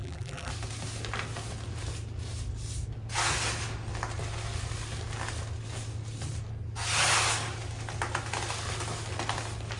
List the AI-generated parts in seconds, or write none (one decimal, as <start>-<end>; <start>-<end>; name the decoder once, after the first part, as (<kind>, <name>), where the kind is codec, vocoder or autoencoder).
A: 0.0-0.5 (vocoder, BigVGAN v2)